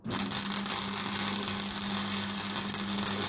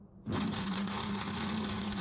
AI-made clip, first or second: second